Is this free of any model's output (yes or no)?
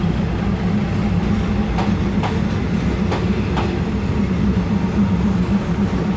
yes